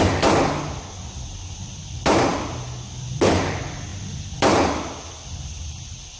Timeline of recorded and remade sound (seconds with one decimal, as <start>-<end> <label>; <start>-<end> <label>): 0.0-3.9 recorded; 3.9-6.2 remade